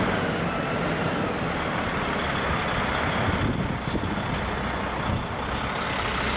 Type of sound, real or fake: real